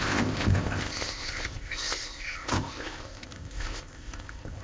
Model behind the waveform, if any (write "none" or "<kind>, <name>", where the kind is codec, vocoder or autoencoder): codec, ZipCodec